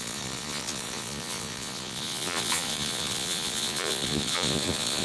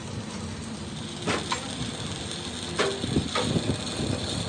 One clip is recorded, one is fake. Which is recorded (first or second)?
second